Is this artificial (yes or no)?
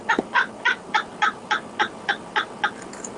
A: no